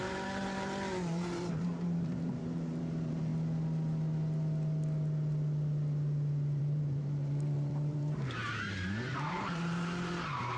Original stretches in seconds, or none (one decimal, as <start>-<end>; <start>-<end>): 3.3-6.6